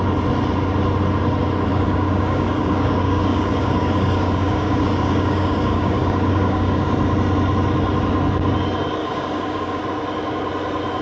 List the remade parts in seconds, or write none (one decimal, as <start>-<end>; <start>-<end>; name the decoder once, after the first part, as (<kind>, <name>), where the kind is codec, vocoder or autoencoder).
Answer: 1.7-6.9 (codec, DAC); 9.0-9.8